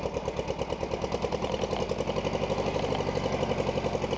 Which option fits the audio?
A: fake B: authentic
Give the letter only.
B